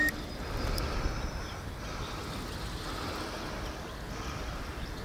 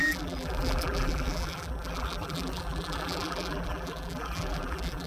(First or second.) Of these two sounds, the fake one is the second